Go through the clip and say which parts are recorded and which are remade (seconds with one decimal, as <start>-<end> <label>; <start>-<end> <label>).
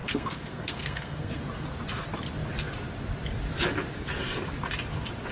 0.0-1.4 remade; 1.4-5.3 recorded